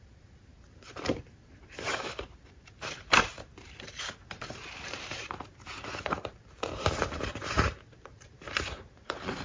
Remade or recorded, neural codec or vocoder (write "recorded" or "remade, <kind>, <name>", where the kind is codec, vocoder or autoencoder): remade, vocoder, BigVGAN v2